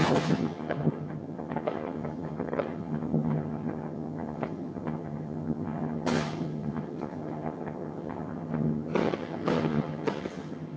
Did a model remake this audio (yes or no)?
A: yes